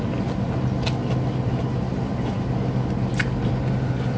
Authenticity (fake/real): real